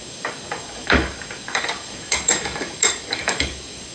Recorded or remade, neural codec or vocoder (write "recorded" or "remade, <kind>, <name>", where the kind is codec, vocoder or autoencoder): remade, codec, DAC